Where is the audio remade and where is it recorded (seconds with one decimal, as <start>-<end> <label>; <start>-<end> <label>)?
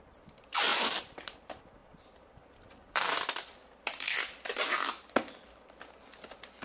0.0-6.6 remade